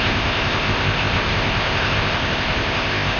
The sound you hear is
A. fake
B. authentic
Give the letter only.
A